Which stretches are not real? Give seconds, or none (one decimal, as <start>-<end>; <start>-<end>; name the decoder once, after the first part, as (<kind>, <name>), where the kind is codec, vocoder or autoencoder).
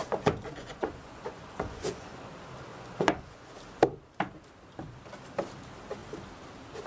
0.0-2.3 (vocoder, Vocos); 2.7-3.5